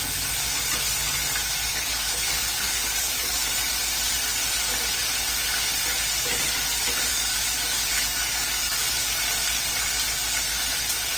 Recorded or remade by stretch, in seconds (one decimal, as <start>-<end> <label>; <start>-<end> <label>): 0.0-1.6 recorded; 1.6-3.5 remade; 3.5-7.1 recorded; 7.1-8.8 remade; 8.8-11.2 recorded